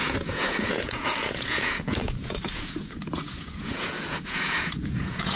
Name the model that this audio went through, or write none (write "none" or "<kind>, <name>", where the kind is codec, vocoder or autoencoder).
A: vocoder, Vocos